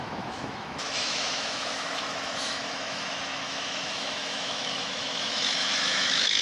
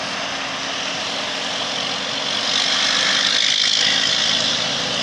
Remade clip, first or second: first